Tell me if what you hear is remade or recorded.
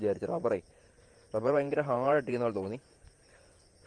remade